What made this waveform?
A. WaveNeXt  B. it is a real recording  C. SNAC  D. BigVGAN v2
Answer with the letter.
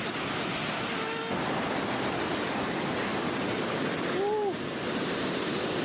B